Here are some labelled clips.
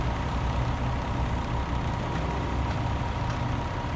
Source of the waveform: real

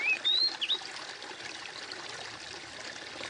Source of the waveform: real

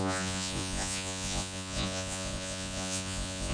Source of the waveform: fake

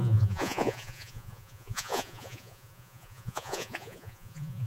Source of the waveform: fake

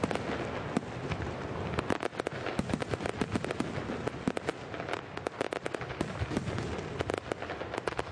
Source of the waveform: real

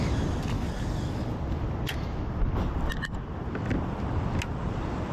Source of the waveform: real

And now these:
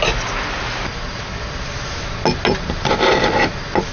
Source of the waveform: real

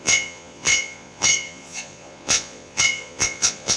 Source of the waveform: fake